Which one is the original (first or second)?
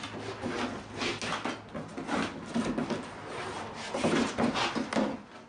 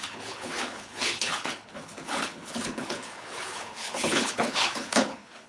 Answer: first